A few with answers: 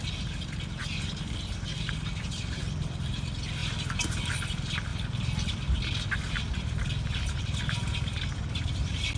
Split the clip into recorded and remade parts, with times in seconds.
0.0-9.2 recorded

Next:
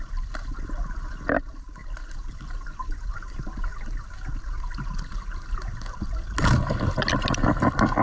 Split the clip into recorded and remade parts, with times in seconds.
0.0-8.0 recorded